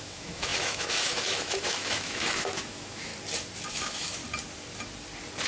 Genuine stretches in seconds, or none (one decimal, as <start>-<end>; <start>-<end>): 3.1-3.7; 4.2-5.5